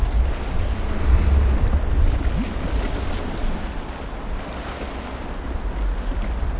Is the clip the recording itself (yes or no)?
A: yes